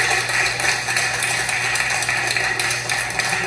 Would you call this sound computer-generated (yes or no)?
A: no